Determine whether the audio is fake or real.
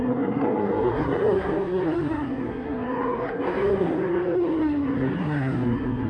fake